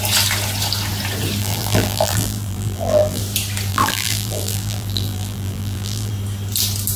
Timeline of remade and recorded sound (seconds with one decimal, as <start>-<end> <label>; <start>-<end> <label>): 0.0-1.4 recorded; 1.4-3.2 remade; 3.2-3.7 recorded; 3.7-6.1 remade; 6.1-7.0 recorded